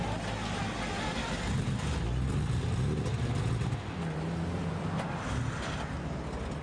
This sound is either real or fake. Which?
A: real